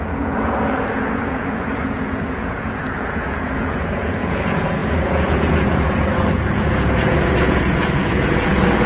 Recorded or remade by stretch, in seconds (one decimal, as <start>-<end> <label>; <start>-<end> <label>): 0.0-8.9 remade